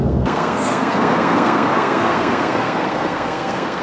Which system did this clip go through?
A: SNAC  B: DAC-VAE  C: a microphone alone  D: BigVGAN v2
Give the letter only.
A